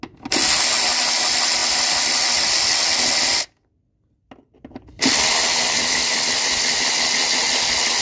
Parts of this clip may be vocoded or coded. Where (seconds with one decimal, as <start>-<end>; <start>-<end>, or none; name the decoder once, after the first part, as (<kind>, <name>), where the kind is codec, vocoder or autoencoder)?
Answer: 1.6-2.2 (vocoder, BigVGAN v2); 5.8-6.8